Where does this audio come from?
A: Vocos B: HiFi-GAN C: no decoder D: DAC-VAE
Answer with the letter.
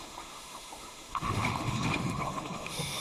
D